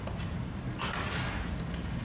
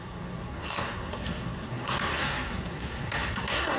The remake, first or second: second